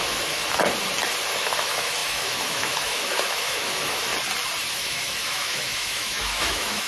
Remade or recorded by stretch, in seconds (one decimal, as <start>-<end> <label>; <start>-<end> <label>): 0.0-0.4 remade; 0.4-1.3 recorded; 1.3-4.1 remade; 4.1-4.7 recorded; 4.7-6.9 remade